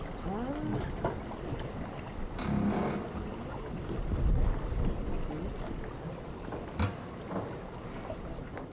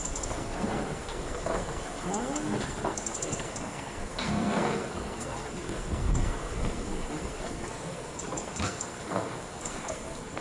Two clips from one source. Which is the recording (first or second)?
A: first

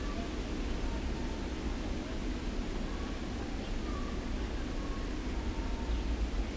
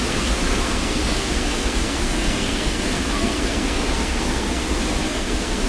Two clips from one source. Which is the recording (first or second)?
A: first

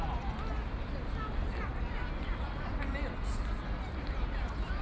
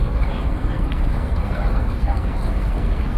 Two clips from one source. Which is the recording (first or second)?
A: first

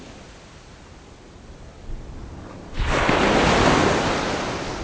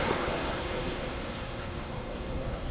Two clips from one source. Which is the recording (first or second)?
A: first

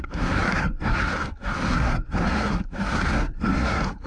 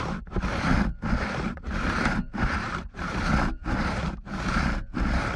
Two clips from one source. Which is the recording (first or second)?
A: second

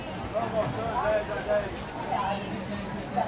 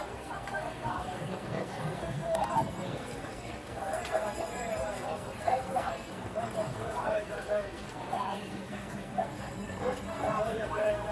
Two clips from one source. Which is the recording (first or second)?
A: first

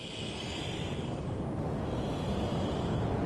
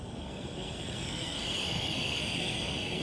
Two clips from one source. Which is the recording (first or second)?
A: first